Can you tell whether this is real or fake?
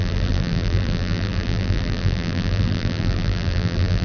fake